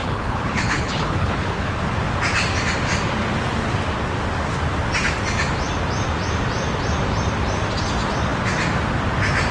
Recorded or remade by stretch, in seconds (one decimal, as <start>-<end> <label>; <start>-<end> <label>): 0.0-1.8 remade; 1.8-9.5 recorded